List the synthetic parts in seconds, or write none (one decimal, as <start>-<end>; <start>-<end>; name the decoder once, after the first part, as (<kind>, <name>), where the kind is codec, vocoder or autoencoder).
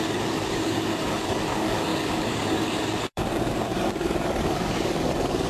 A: 0.0-5.5 (codec, DAC)